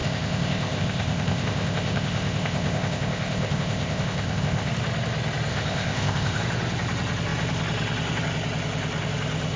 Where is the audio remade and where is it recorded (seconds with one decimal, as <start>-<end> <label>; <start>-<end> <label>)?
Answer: 0.0-4.7 remade; 4.7-5.5 recorded; 5.5-6.4 remade; 6.4-9.6 recorded